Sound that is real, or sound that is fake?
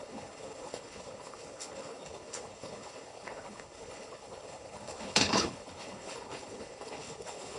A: fake